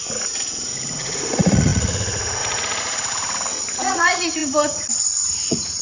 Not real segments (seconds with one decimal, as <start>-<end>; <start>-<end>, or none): 0.0-3.2; 3.8-5.8

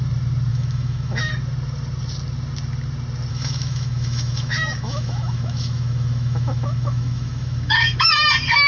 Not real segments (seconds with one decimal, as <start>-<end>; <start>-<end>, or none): 0.5-1.3; 3.3-8.2

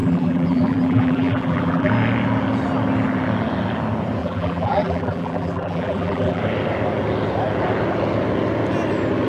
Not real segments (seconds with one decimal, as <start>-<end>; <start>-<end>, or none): 0.0-1.9; 4.2-6.4

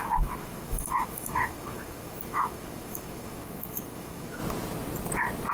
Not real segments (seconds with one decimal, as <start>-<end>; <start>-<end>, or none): 0.0-4.4

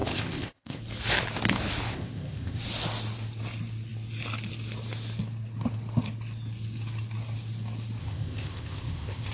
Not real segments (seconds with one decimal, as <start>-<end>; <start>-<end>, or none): 0.0-0.8; 1.9-2.6; 8.0-9.3